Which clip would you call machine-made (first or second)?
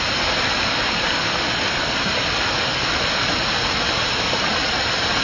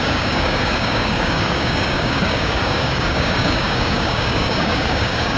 second